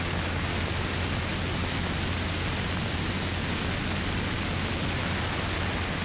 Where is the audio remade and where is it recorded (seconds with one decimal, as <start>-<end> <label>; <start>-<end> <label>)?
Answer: 0.0-6.0 recorded